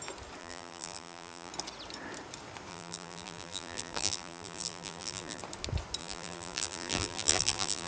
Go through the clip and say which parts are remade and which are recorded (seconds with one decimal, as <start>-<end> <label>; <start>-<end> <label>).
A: 0.0-0.4 recorded; 0.4-1.5 remade; 1.5-2.7 recorded; 2.7-5.4 remade; 5.4-6.0 recorded; 6.0-7.9 remade